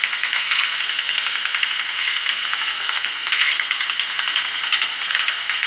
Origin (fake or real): fake